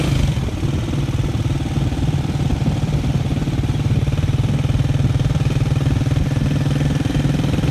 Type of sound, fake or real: real